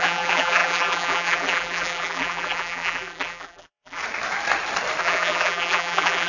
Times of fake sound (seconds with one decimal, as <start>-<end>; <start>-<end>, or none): 0.0-4.0; 5.0-6.3